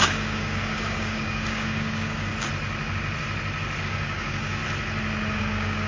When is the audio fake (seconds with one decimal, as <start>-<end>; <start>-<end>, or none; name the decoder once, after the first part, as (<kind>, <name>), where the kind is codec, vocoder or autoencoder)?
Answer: 0.0-2.3 (codec, DAC); 3.8-4.6; 5.4-5.9